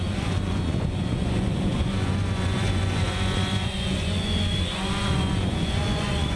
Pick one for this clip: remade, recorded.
remade